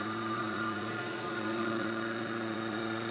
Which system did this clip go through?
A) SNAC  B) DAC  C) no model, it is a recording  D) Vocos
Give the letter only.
D